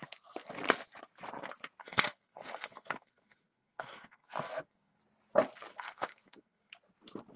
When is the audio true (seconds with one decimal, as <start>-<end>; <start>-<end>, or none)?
0.0-1.8; 5.0-5.7; 6.7-7.4